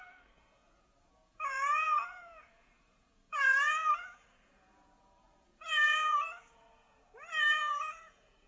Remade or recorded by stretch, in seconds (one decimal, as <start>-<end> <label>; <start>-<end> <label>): 0.0-8.5 remade